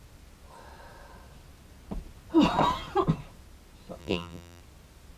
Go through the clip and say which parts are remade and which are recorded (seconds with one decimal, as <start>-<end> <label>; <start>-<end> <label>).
0.0-4.0 recorded; 4.0-4.6 remade; 4.6-5.2 recorded